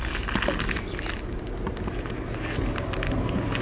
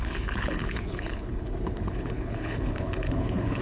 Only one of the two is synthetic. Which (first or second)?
second